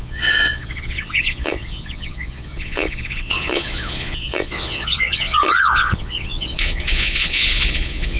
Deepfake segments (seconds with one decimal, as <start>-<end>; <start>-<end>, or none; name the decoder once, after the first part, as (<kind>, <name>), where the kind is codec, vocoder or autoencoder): 0.0-8.2 (vocoder, Vocos)